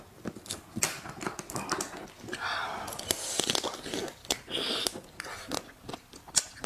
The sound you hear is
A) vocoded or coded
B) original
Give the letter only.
B